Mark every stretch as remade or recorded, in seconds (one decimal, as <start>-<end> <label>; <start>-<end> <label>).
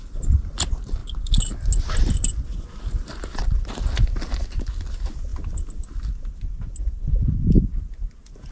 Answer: 0.0-8.5 recorded